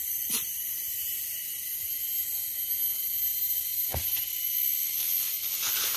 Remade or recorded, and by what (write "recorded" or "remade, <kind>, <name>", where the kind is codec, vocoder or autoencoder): recorded